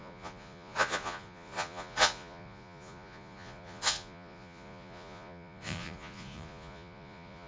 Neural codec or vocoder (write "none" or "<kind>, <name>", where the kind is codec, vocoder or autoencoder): vocoder, Vocos